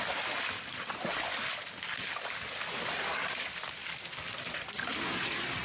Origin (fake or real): real